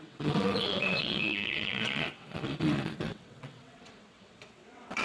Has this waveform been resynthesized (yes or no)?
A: yes